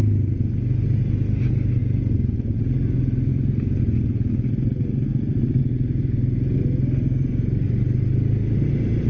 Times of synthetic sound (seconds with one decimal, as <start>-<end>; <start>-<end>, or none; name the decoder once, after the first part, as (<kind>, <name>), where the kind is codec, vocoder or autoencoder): none